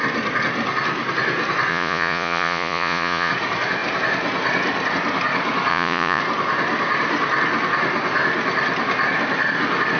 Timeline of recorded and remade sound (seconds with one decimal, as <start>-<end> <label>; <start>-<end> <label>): 0.0-1.7 recorded; 1.7-3.3 remade; 3.3-5.7 recorded; 5.7-6.2 remade; 6.2-10.0 recorded